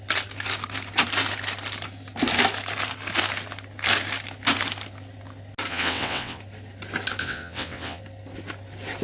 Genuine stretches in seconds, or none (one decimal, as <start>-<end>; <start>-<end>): 0.0-5.7; 6.4-7.2; 8.0-9.0